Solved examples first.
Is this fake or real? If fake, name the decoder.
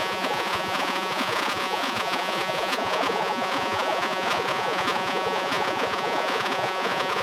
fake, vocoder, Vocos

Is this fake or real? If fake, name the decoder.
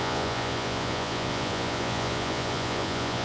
fake, vocoder, Vocos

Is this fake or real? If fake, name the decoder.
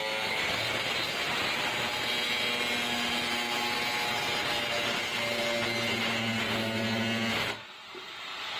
real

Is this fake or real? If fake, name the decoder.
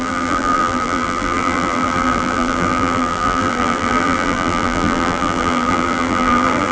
fake, vocoder, BigVGAN v2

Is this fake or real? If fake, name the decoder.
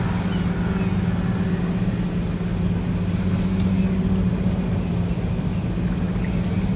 real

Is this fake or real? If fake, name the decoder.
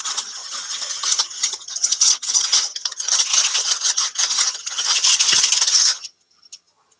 fake, vocoder, HiFi-GAN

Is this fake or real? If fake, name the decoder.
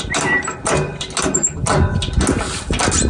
real